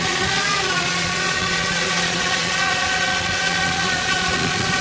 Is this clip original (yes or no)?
no